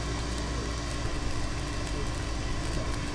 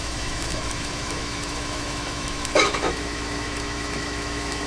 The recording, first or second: first